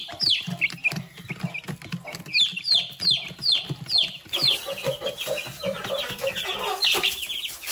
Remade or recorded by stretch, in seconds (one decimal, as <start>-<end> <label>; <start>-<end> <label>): 0.0-1.3 remade; 1.3-2.5 recorded; 2.5-6.3 remade; 6.3-7.7 recorded